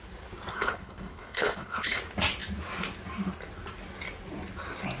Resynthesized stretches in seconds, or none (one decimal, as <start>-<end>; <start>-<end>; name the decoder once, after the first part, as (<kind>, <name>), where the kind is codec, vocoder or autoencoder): 0.5-2.0 (codec, HILCodec)